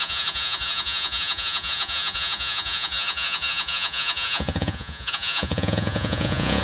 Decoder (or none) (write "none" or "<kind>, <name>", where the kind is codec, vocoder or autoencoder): vocoder, Vocos